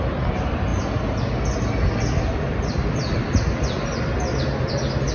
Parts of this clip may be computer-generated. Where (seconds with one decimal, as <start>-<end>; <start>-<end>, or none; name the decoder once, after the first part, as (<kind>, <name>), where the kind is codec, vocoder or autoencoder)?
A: none